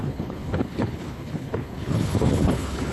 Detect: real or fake fake